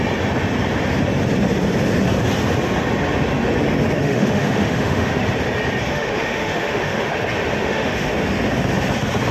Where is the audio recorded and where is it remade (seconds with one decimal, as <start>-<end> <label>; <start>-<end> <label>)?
0.0-4.0 recorded; 4.0-5.2 remade; 5.2-5.9 recorded; 5.9-7.1 remade; 7.1-7.6 recorded; 7.6-8.1 remade; 8.1-9.3 recorded

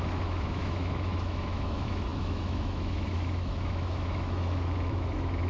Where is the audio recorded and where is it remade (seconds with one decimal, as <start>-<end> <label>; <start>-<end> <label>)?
0.0-5.5 remade

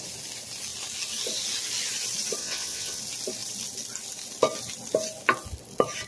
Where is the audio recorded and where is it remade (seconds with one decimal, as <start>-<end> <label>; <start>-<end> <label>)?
0.0-2.4 recorded; 2.4-3.0 remade; 3.0-6.1 recorded

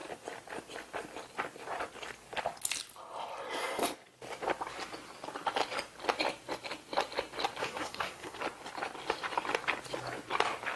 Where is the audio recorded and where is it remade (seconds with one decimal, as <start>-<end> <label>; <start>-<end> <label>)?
0.0-7.6 recorded; 7.6-8.4 remade; 8.4-10.8 recorded

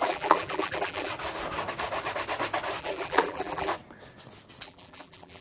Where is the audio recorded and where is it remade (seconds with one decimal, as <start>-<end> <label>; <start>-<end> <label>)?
0.0-1.1 remade; 1.1-2.8 recorded; 2.8-3.7 remade; 3.7-4.6 recorded; 4.6-5.4 remade

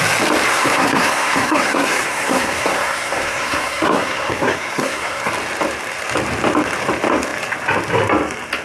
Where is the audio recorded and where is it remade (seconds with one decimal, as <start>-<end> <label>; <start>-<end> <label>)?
0.0-0.5 recorded; 0.5-5.3 remade; 5.3-8.6 recorded

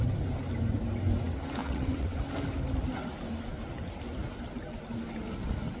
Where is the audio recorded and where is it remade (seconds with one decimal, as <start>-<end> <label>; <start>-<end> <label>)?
0.0-1.6 recorded; 1.6-2.2 remade; 2.2-5.8 recorded

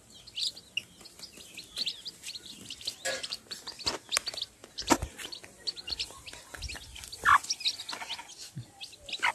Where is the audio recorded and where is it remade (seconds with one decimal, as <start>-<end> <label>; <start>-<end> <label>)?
0.0-0.8 recorded; 0.8-3.7 remade; 3.7-4.6 recorded; 4.6-6.8 remade; 6.8-9.3 recorded